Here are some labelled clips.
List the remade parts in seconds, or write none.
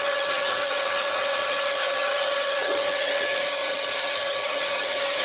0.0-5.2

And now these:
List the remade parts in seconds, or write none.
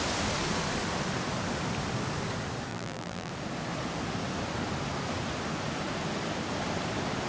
2.7-3.3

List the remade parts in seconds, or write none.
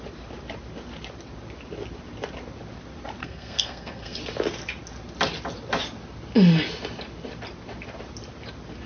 3.2-4.2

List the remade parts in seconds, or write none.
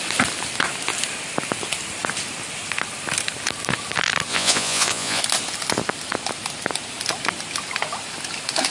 4.3-5.2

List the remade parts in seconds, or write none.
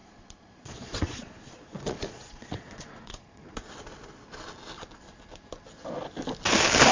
0.0-3.7